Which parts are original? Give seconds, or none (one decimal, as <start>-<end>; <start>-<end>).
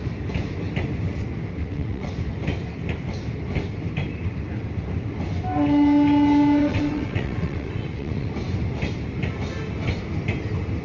0.0-1.6; 2.1-6.6; 8.3-10.8